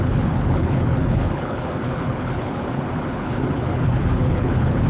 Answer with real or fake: fake